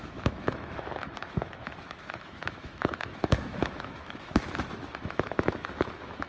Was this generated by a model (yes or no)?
yes